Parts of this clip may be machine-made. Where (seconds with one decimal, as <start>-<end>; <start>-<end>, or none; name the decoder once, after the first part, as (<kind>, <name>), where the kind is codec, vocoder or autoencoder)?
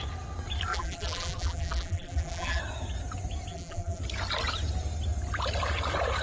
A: 0.7-2.6 (vocoder, BigVGAN v2); 3.5-4.0